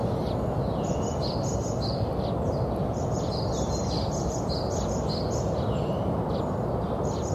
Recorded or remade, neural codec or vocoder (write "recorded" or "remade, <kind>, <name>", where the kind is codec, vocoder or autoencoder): recorded